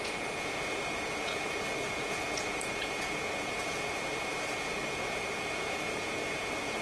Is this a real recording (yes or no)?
no